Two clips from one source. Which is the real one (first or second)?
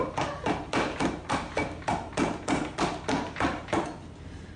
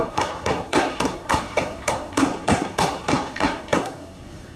first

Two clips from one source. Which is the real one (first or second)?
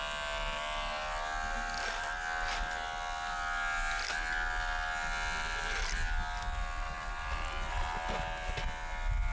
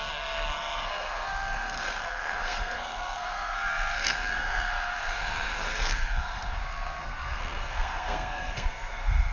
first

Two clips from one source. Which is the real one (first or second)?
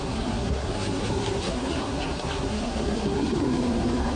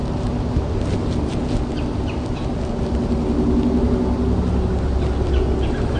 second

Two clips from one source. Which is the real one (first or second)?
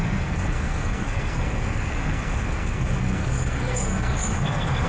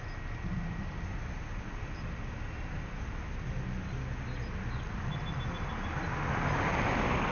second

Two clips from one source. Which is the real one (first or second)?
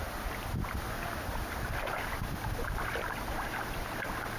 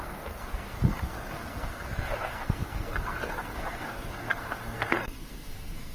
first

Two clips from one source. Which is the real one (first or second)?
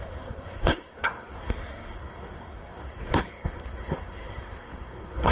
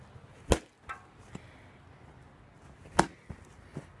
second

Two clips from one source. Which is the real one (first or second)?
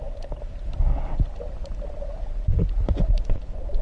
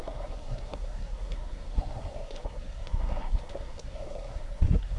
first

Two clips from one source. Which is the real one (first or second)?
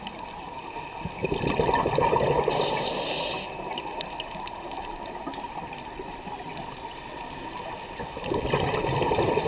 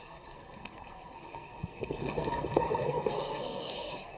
first